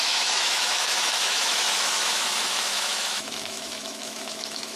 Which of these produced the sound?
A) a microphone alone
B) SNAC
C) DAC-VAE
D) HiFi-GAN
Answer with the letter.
C